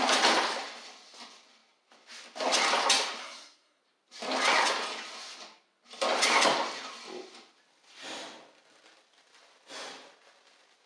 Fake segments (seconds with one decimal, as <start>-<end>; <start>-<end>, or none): 3.2-3.8